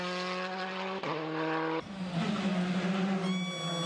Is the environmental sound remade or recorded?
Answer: recorded